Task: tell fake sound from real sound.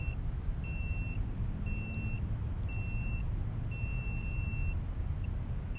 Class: real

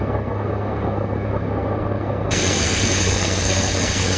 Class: fake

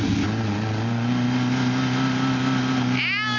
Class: real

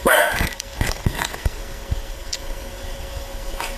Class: fake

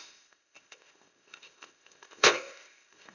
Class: fake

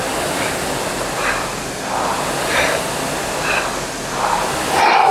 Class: real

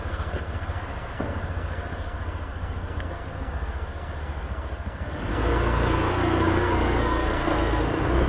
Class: fake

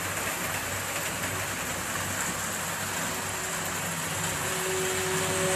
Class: real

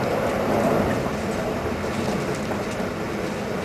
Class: real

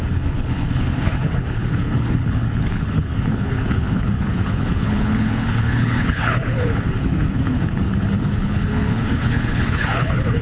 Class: fake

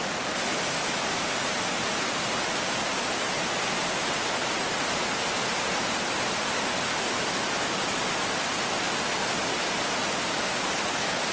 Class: real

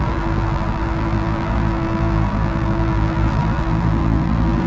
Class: fake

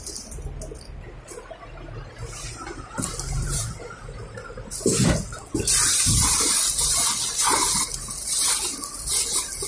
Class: real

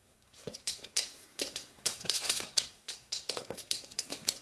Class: fake